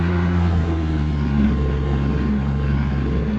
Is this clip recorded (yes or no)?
no